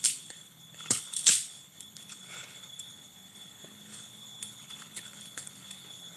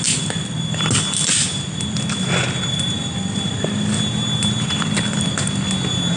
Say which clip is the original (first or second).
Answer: second